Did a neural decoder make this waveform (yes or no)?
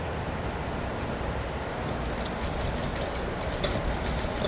yes